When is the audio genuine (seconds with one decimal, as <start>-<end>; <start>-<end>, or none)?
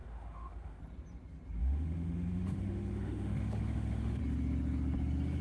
0.8-1.6; 4.2-5.4